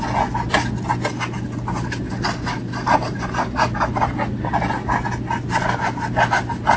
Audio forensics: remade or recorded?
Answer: recorded